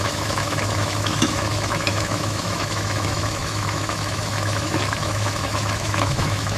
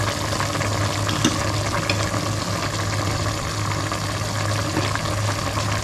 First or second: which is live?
second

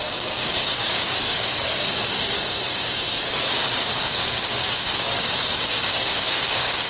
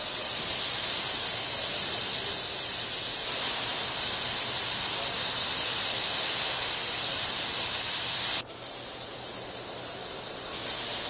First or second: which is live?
second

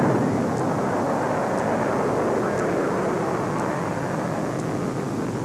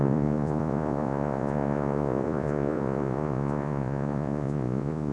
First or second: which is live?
first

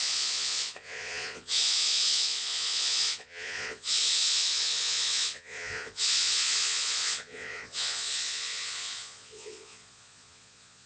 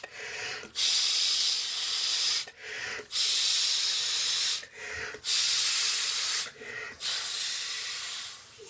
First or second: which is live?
second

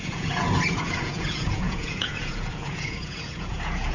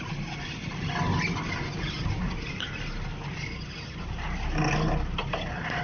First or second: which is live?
second